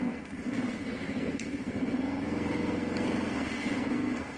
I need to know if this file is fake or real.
fake